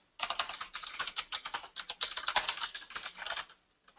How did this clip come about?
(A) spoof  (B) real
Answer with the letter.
B